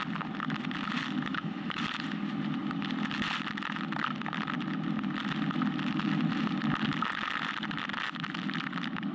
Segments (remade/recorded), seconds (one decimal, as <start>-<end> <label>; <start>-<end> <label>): 0.0-1.3 recorded; 1.3-1.8 remade; 1.8-9.1 recorded